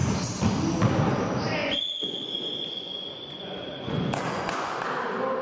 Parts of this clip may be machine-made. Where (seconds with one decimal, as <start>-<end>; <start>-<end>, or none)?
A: 1.6-4.8